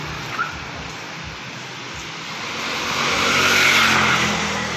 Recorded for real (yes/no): yes